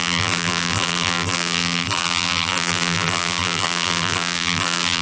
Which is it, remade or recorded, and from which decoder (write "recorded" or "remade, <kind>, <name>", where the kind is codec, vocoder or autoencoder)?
remade, vocoder, BigVGAN v2